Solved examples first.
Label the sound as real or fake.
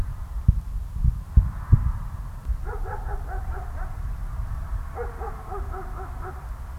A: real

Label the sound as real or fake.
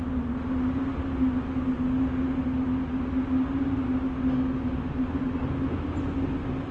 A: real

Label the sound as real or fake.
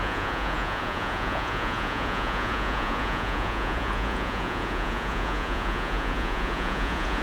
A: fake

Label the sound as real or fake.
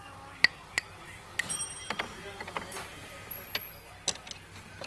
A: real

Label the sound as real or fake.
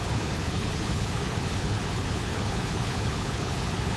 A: fake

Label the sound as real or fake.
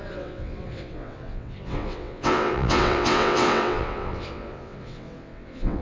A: fake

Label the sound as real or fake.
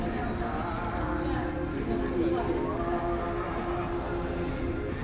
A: real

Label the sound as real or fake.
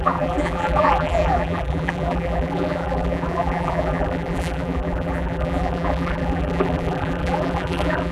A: fake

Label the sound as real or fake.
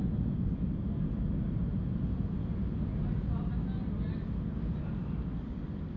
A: real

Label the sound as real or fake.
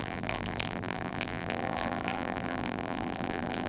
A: fake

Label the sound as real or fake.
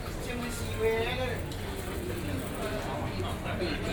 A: real